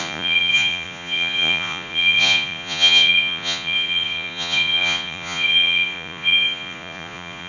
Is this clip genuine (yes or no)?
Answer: no